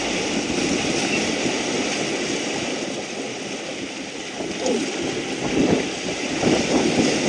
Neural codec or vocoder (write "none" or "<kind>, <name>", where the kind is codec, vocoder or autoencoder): none